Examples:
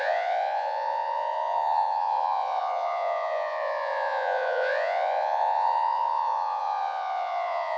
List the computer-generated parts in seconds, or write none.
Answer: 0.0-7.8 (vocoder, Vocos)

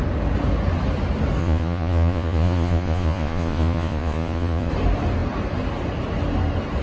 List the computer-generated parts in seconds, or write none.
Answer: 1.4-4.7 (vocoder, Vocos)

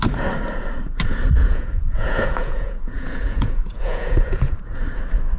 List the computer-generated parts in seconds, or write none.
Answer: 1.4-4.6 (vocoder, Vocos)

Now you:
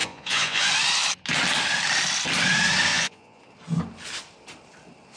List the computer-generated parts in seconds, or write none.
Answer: 0.0-0.7 (vocoder, Vocos); 2.9-3.4

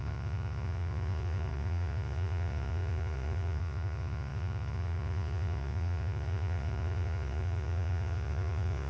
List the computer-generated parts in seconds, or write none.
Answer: 0.0-8.9 (vocoder, Vocos)